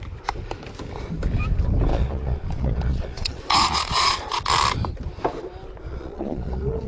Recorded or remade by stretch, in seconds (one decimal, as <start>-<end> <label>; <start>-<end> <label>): 0.0-1.9 recorded; 1.9-4.4 remade; 4.4-5.9 recorded; 5.9-6.9 remade